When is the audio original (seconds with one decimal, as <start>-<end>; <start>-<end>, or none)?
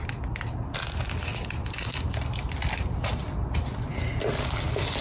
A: 0.0-5.0